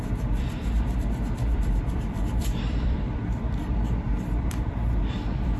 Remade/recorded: remade